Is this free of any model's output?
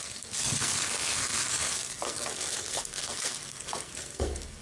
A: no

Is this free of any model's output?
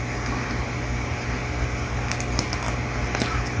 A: yes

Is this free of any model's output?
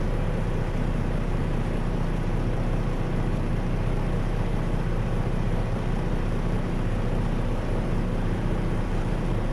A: no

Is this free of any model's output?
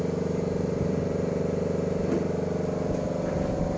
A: yes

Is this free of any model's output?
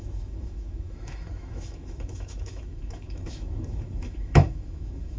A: no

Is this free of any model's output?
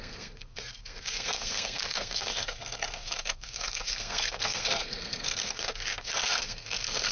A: no